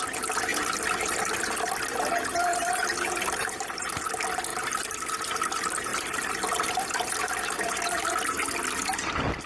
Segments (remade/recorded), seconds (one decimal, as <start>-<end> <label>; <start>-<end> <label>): 0.0-2.5 recorded; 2.5-4.1 remade; 4.1-4.5 recorded; 4.5-5.5 remade; 5.5-9.5 recorded